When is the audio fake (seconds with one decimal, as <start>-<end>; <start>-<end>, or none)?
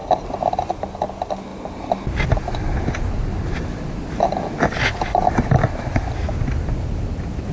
0.0-0.5